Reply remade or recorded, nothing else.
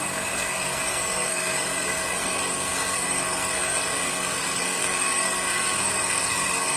remade